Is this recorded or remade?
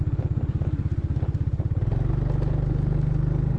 recorded